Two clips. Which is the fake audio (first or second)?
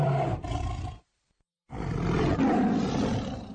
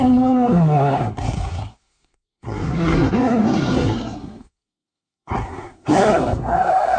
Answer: second